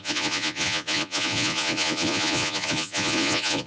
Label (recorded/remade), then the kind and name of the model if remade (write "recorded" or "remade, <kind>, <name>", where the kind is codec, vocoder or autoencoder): remade, vocoder, Vocos